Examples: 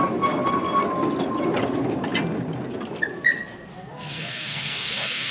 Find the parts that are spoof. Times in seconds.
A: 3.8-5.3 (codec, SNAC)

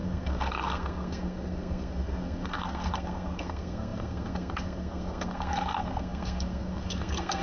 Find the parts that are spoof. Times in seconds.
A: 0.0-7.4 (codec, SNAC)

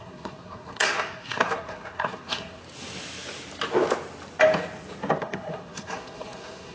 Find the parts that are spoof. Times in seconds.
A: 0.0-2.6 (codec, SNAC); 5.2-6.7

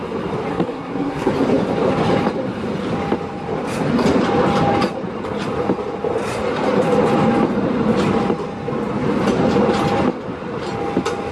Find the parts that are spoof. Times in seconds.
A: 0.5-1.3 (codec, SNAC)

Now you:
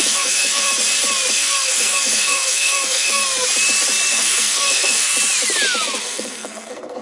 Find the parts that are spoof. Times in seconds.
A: 0.0-0.7 (codec, SNAC); 1.3-3.2; 4.1-5.1; 6.0-7.0

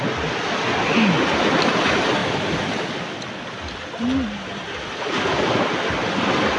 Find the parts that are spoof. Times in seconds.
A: none